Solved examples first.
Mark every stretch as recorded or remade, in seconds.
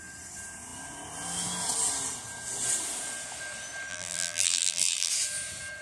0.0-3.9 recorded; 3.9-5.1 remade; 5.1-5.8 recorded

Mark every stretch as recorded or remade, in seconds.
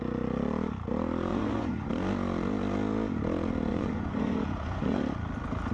0.0-1.3 recorded; 1.3-1.9 remade; 1.9-3.7 recorded; 3.7-5.0 remade; 5.0-5.7 recorded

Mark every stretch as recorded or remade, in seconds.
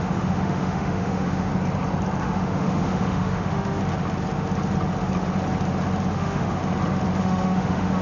0.0-1.5 remade; 1.5-2.2 recorded; 2.2-3.8 remade; 3.8-6.1 recorded; 6.1-6.6 remade; 6.6-7.2 recorded; 7.2-8.0 remade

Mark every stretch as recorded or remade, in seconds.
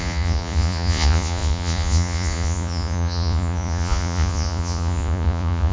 0.0-5.7 remade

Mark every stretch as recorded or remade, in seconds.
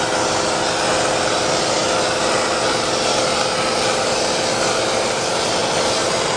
0.0-6.4 recorded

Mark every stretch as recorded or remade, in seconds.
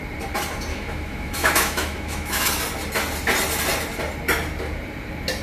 0.0-0.7 recorded; 0.7-2.5 remade; 2.5-5.4 recorded